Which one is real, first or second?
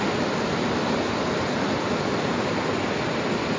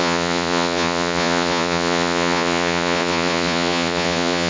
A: first